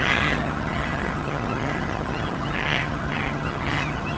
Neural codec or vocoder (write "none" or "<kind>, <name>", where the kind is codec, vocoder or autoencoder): vocoder, HiFi-GAN